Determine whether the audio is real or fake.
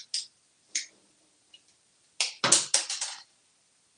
real